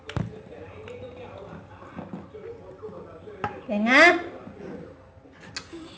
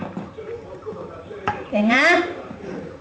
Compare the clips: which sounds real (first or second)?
first